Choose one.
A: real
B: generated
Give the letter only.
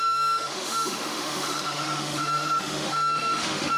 B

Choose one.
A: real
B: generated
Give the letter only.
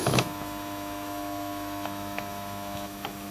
B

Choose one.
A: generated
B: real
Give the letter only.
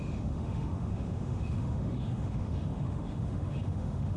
A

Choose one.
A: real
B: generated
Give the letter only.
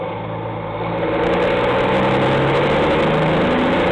A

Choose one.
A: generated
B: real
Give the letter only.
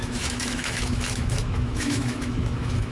A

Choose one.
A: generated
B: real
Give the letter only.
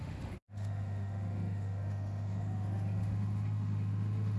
A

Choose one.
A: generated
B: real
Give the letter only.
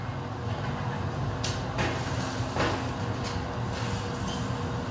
B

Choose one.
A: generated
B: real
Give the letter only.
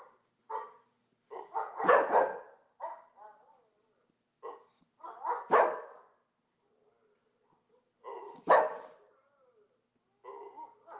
B